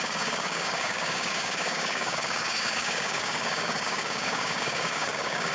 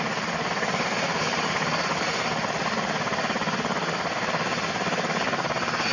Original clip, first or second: second